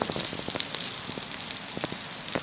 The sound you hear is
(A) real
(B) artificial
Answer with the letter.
A